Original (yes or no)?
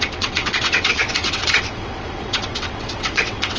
no